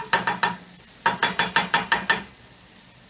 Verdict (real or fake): real